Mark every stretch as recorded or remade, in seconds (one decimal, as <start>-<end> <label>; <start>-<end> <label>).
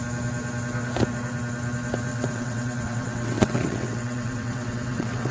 0.0-2.1 recorded; 2.1-5.3 remade